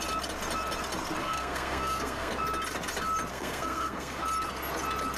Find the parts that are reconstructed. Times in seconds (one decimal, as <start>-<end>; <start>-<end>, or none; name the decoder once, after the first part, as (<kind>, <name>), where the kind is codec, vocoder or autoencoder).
1.2-2.3 (codec, SNAC); 3.3-4.2